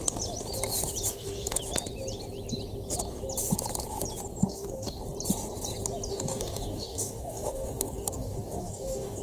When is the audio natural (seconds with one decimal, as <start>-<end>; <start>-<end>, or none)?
0.0-1.1; 1.6-4.4; 5.0-6.1